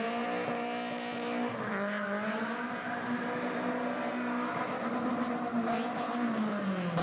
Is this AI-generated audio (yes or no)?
no